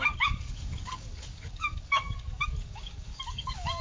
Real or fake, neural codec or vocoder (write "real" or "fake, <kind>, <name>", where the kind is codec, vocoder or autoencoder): fake, codec, DAC